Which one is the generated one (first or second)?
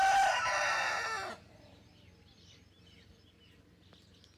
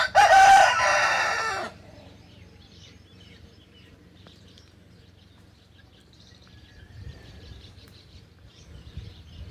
second